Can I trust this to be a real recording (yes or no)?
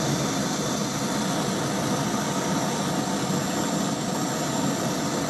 yes